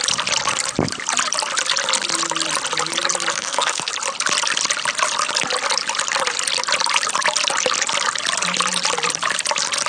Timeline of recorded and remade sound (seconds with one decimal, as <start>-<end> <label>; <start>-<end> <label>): 0.0-3.3 recorded; 3.3-3.9 remade; 3.9-9.9 recorded